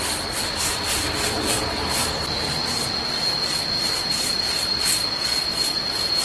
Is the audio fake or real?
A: real